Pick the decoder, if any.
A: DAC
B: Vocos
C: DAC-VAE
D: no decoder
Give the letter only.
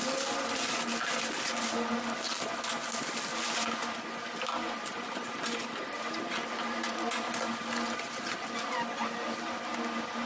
D